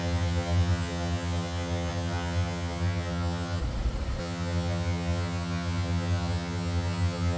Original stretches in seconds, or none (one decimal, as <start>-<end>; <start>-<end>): 3.6-4.2